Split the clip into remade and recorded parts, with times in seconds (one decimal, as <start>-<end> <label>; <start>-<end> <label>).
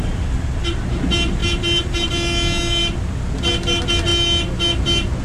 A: 0.0-1.4 recorded; 1.4-2.1 remade; 2.1-5.2 recorded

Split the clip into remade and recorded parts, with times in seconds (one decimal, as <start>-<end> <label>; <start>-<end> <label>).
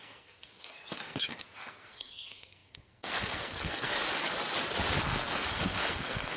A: 0.0-4.0 remade; 4.0-5.0 recorded; 5.0-6.4 remade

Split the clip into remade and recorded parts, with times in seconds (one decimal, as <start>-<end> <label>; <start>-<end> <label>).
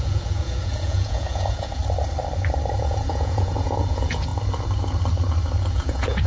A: 0.0-1.8 remade; 1.8-2.8 recorded; 2.8-4.3 remade; 4.3-5.7 recorded; 5.7-6.3 remade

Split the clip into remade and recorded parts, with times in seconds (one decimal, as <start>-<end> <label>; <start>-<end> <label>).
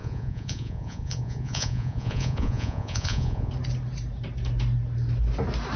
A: 0.0-3.5 remade; 3.5-5.8 recorded